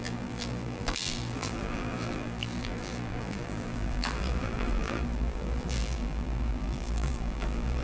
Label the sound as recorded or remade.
remade